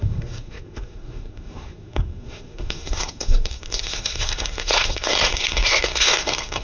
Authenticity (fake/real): fake